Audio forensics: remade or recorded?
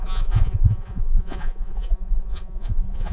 remade